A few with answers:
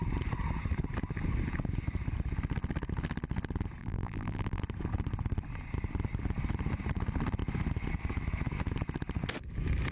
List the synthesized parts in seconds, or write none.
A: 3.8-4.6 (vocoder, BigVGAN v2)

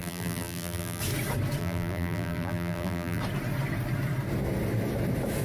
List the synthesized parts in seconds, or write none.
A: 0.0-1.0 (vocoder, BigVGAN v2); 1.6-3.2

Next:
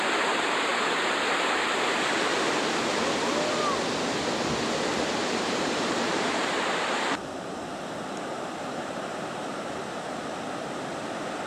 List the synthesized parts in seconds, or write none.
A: 4.9-9.8 (vocoder, BigVGAN v2)

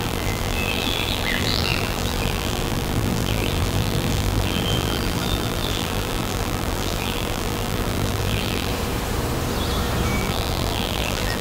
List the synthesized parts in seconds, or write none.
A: 0.0-8.7 (vocoder, BigVGAN v2); 10.2-11.4